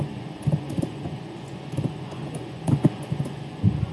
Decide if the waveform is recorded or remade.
remade